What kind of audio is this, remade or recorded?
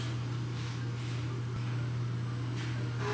recorded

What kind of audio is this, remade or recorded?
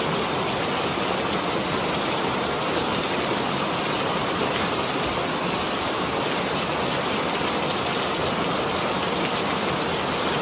recorded